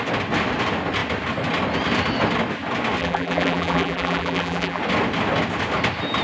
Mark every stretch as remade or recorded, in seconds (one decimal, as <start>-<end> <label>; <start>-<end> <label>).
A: 0.0-3.0 recorded; 3.0-4.8 remade; 4.8-6.2 recorded